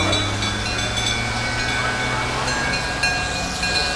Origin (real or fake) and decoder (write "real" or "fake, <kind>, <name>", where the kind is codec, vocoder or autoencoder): real